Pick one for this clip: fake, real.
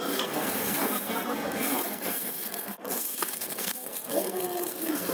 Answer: fake